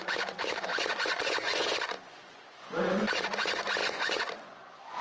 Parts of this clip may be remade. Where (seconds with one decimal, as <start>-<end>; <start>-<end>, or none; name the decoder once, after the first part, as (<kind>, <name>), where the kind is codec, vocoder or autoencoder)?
0.0-5.0 (vocoder, Vocos)